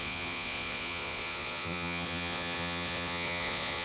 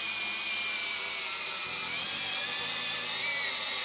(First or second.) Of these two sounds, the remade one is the first